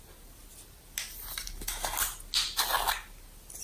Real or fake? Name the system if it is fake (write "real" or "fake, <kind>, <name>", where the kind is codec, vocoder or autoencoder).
real